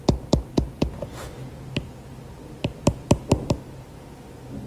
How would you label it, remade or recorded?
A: recorded